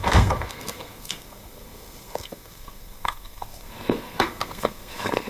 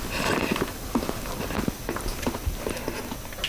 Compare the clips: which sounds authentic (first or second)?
second